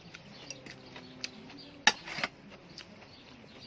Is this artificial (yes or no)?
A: no